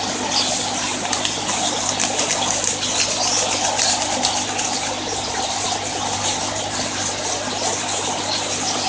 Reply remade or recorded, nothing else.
recorded